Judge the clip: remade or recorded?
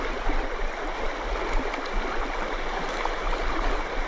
recorded